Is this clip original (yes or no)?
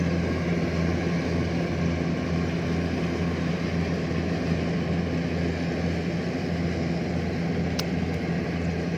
yes